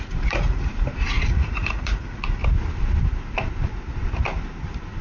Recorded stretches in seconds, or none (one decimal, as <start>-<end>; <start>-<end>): 0.7-1.3; 2.4-5.0